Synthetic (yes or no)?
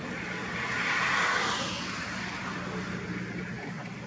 no